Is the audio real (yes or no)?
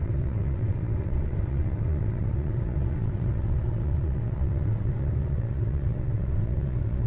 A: no